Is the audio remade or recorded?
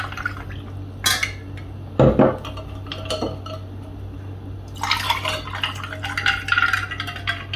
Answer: recorded